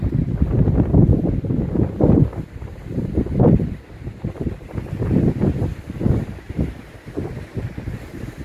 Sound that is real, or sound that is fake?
real